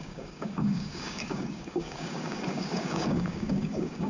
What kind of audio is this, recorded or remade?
remade